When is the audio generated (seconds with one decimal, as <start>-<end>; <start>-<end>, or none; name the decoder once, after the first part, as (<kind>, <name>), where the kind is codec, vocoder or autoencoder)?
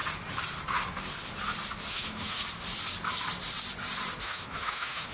1.9-2.4 (autoencoder, DAC-VAE); 4.2-5.1